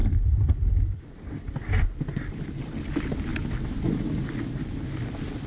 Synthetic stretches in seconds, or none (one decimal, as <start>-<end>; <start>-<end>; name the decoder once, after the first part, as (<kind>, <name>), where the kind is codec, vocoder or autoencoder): 0.0-1.7 (vocoder, BigVGAN v2)